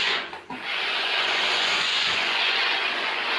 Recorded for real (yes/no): no